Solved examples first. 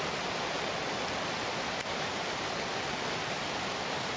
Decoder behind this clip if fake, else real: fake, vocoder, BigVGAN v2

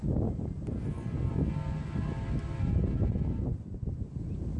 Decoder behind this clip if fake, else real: real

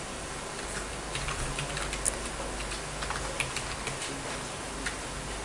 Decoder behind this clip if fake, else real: real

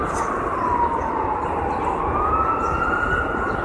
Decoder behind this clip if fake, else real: real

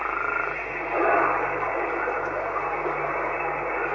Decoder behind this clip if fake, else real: real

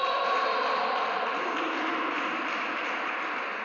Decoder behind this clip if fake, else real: fake, vocoder, BigVGAN v2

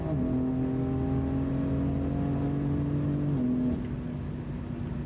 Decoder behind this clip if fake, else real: real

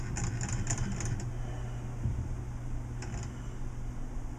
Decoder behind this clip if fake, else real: real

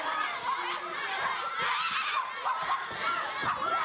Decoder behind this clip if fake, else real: real